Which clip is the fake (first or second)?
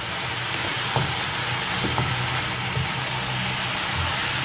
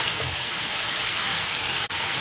second